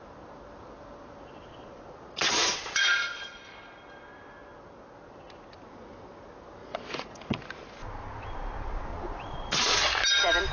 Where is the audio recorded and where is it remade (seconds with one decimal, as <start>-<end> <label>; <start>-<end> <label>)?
0.0-1.5 recorded; 1.5-3.6 remade; 3.6-6.6 recorded; 6.6-7.4 remade; 7.4-8.9 recorded; 8.9-9.6 remade; 9.6-10.5 recorded